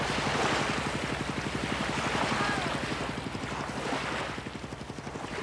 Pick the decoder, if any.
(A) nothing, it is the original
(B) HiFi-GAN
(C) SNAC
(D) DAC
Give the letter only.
A